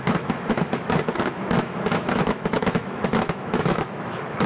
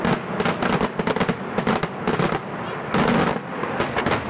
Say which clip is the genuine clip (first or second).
second